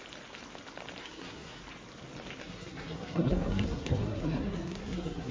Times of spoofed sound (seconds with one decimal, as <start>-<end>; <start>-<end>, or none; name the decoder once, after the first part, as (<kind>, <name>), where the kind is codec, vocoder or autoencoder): 1.0-1.6 (codec, SNAC); 2.4-5.3